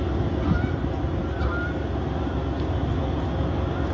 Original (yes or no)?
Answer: yes